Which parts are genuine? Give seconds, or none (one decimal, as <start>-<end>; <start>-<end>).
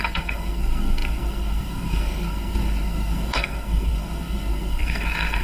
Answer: none